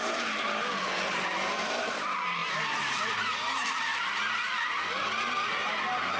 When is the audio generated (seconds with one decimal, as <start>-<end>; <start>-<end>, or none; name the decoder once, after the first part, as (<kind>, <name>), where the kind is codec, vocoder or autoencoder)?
none